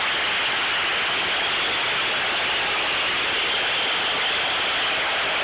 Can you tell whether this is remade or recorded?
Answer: recorded